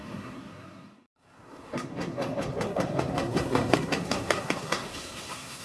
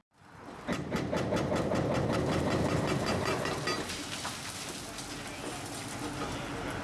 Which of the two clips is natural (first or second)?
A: second